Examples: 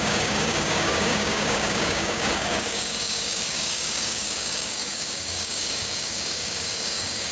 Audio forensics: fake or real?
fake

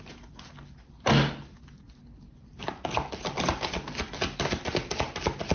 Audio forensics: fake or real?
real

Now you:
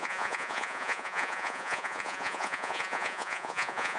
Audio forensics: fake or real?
fake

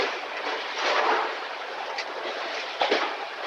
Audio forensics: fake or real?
real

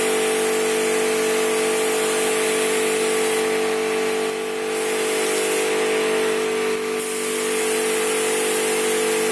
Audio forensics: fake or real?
real